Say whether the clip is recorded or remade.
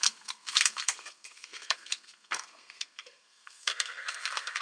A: remade